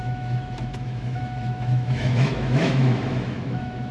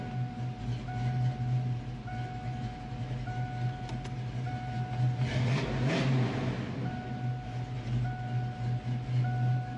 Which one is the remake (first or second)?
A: first